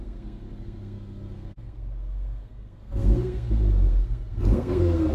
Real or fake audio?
fake